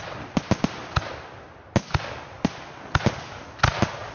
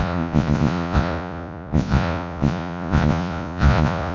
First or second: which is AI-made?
second